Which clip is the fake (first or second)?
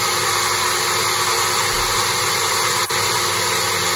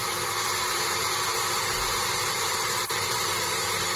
second